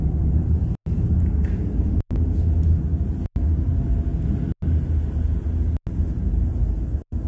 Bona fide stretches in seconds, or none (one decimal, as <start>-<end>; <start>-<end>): 0.0-7.3